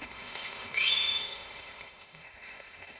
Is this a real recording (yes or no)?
no